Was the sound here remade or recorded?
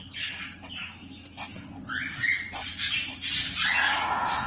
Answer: recorded